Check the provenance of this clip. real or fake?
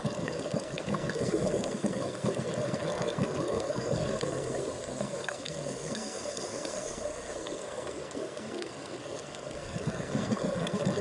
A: fake